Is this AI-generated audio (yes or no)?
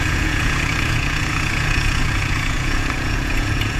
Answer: yes